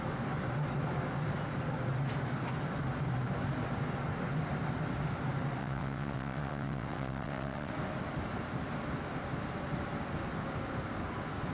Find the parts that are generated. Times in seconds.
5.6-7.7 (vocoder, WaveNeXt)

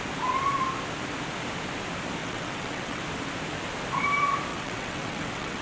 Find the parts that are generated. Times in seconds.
2.2-3.0 (vocoder, WaveNeXt); 4.5-5.6

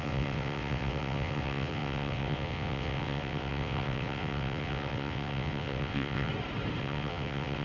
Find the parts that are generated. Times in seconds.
0.0-6.3 (vocoder, WaveNeXt); 6.8-7.6

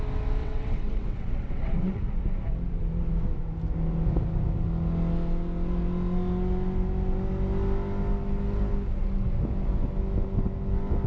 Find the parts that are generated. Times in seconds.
0.4-2.2 (vocoder, WaveNeXt)

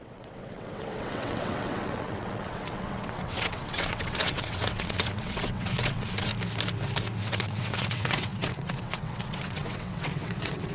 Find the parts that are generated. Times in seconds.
0.0-6.3 (vocoder, WaveNeXt); 7.2-10.7

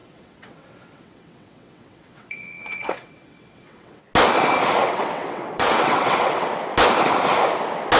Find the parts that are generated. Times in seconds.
0.0-4.0 (vocoder, WaveNeXt); 4.8-6.5

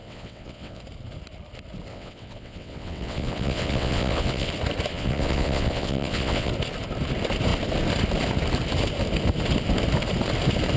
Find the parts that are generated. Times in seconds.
0.0-0.8 (vocoder, WaveNeXt); 1.9-4.5; 4.9-6.5

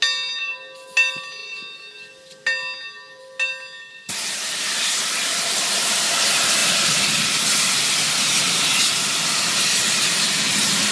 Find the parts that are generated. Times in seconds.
none